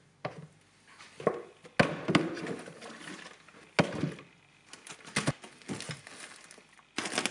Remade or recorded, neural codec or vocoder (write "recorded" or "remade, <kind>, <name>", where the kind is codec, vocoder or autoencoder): recorded